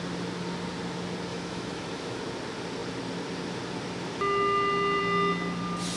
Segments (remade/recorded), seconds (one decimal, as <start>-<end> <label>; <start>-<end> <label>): 0.0-1.3 recorded; 1.3-2.2 remade; 2.2-6.0 recorded